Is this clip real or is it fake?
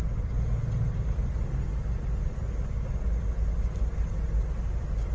real